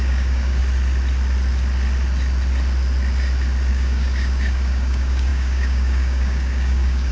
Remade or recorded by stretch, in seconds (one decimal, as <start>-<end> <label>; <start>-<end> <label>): 0.0-0.6 remade; 0.6-3.7 recorded; 3.7-7.1 remade